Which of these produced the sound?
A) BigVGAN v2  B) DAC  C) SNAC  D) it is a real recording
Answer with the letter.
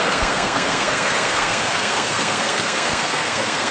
C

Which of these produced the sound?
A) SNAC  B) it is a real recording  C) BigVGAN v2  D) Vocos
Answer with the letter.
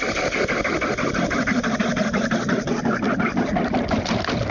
B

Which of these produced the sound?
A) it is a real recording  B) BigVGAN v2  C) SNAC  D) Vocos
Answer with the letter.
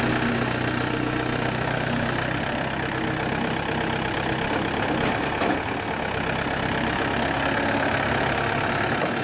A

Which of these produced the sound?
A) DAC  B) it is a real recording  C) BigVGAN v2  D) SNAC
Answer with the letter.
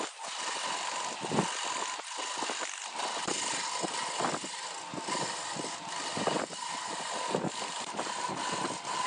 B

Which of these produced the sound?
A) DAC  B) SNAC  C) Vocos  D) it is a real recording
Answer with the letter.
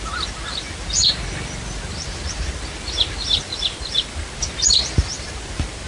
D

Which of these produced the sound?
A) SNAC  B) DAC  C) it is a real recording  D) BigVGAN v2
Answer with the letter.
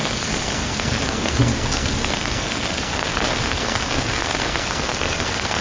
A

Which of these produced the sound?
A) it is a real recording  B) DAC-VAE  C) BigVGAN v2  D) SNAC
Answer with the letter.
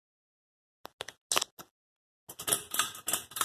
A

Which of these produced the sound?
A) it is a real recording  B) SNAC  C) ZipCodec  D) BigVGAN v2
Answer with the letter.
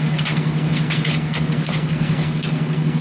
B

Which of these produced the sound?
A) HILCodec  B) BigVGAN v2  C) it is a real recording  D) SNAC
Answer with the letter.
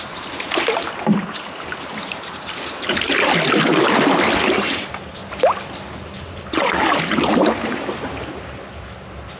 C